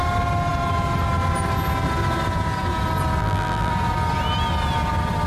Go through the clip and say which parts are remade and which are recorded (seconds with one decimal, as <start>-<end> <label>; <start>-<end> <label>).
0.0-3.2 recorded; 3.2-3.7 remade; 3.7-5.3 recorded